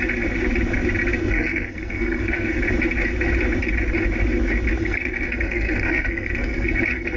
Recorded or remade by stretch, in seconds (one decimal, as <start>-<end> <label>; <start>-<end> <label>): 0.0-1.2 recorded; 1.2-2.6 remade; 2.6-4.8 recorded; 4.8-7.2 remade